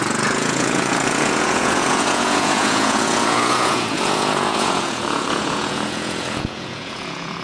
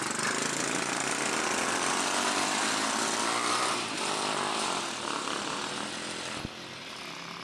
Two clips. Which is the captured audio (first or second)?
second